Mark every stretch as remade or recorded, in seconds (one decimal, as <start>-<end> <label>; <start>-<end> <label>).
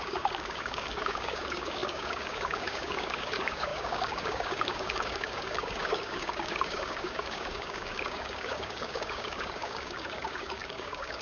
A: 0.0-11.2 remade